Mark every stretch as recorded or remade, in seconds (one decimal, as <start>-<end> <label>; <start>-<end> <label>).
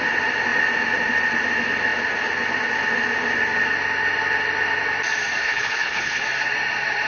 0.0-5.4 recorded; 5.4-6.2 remade; 6.2-7.1 recorded